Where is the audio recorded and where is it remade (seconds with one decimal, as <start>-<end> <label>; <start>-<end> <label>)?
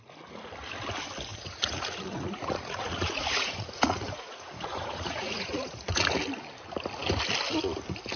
0.0-1.3 recorded; 1.3-6.2 remade; 6.2-8.2 recorded